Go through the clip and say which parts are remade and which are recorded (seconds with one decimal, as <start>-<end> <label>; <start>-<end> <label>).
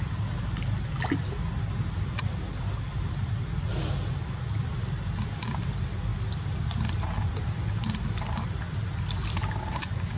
0.0-10.2 recorded